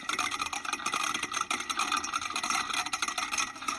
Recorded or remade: remade